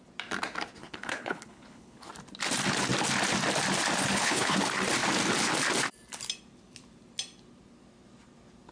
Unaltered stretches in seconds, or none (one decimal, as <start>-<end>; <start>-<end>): 0.0-0.8; 2.1-4.0; 4.6-8.7